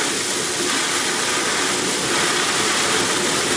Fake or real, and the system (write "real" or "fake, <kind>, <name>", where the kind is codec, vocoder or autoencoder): real